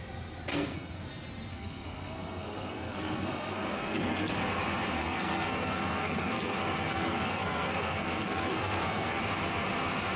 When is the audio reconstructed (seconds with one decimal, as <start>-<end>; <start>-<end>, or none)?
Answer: 0.5-1.0; 1.5-4.3; 5.0-9.2